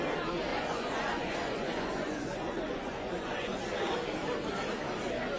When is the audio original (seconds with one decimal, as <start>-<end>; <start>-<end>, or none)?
0.0-0.5; 3.6-5.4